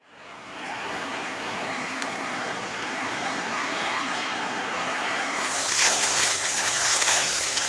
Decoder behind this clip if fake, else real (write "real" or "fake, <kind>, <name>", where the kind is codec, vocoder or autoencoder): fake, codec, SNAC